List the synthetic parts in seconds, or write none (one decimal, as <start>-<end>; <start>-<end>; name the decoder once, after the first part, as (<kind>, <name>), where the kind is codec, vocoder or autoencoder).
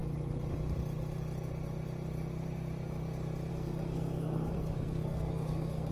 3.5-5.9 (codec, SNAC)